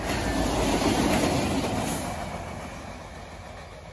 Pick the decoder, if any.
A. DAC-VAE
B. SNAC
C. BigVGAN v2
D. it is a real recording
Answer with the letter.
D